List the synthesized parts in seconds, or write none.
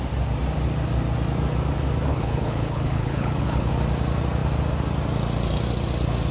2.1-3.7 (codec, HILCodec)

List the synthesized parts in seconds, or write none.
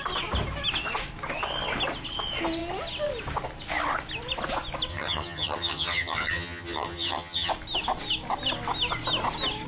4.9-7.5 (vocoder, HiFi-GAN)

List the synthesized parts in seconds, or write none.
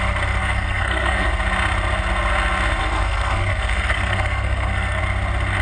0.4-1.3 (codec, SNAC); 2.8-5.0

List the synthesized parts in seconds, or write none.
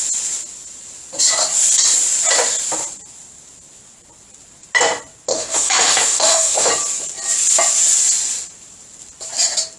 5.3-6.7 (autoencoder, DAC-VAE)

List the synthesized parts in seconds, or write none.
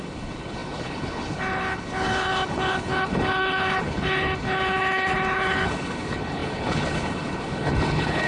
0.0-8.3 (codec, HILCodec)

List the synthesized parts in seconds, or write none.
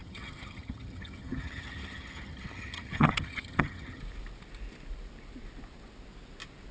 0.0-4.0 (vocoder, HiFi-GAN)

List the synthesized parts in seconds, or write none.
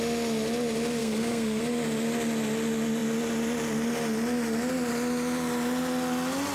1.0-1.6 (codec, SNAC)